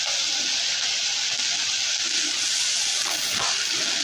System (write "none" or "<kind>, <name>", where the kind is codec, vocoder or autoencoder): none